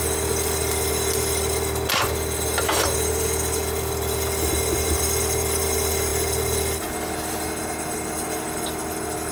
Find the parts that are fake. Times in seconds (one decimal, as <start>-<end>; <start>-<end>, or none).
none